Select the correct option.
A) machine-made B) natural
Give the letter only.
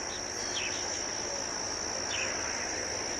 B